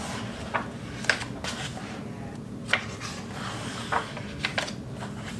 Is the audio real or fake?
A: real